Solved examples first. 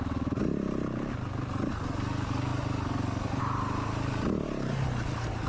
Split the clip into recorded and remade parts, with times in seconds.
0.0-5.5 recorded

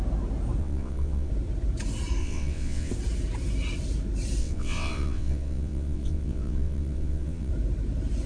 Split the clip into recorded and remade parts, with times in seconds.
0.0-0.6 recorded; 0.6-1.3 remade; 1.3-2.2 recorded; 2.2-2.9 remade; 2.9-4.4 recorded; 4.4-7.5 remade; 7.5-8.3 recorded

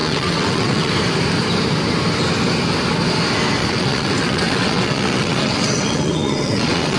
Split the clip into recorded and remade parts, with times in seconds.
0.0-0.9 remade; 0.9-3.6 recorded; 3.6-7.0 remade

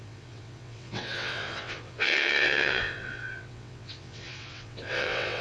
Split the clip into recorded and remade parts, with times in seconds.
0.0-5.4 remade

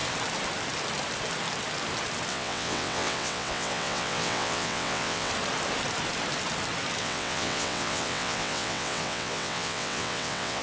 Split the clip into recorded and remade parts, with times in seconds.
0.0-2.3 recorded; 2.3-5.3 remade; 5.3-7.0 recorded; 7.0-10.6 remade

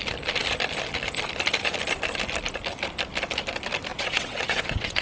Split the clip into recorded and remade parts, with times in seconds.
0.0-3.9 recorded; 3.9-5.0 remade